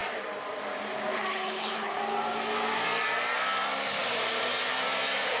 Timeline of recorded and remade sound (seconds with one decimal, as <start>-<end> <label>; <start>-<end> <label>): 0.0-1.3 recorded; 1.3-2.0 remade; 2.0-5.4 recorded